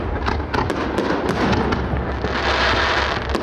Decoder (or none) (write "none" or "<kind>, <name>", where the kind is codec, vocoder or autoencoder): none